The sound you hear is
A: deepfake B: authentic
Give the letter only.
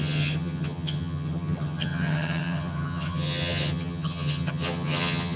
A